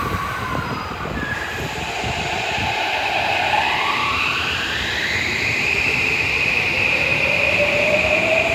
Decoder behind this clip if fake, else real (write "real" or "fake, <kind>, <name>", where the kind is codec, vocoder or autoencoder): fake, vocoder, BigVGAN v2